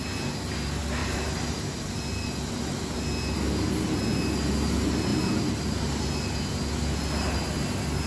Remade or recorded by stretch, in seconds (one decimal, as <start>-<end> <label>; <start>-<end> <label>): 0.0-1.0 recorded; 1.0-1.8 remade; 1.8-8.1 recorded